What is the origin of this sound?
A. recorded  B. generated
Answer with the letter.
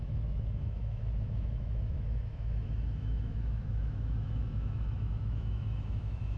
B